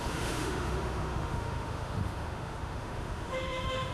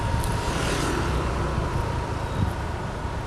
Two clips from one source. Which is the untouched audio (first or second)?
second